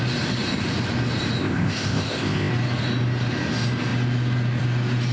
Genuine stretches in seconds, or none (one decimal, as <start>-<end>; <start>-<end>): 0.0-1.4; 2.5-5.1